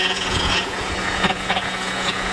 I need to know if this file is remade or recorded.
remade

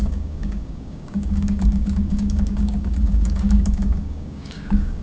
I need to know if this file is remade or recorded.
remade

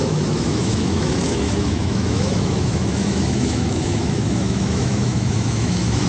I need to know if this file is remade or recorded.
remade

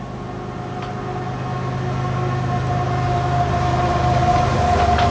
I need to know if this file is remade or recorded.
recorded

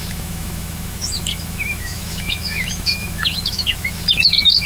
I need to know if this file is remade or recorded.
remade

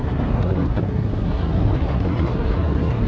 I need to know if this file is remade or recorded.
remade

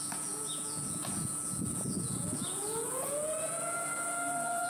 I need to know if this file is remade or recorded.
remade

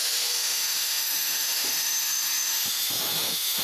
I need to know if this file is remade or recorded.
remade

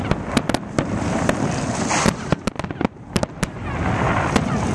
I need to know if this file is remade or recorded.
recorded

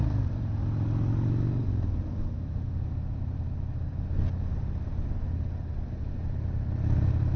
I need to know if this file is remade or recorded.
recorded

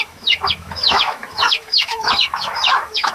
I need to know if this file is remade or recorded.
remade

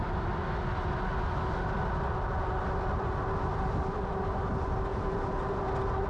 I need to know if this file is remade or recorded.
recorded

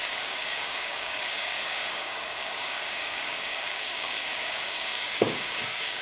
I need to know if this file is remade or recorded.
remade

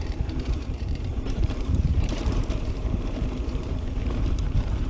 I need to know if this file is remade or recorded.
remade